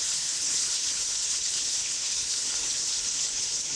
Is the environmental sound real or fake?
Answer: fake